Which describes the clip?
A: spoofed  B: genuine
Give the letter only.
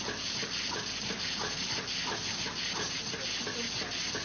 B